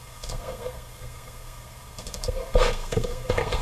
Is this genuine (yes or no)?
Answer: no